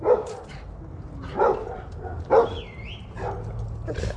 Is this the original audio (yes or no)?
yes